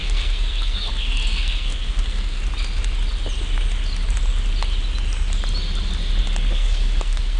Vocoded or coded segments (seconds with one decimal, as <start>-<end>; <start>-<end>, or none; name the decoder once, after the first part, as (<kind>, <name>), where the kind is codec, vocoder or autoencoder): 0.0-2.4 (codec, SNAC); 6.5-7.4